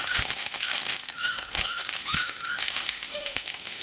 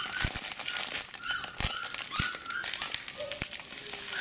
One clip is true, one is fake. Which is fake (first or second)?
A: first